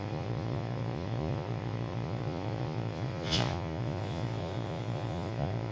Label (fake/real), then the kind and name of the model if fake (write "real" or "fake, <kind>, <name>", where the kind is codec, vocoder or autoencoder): fake, vocoder, Vocos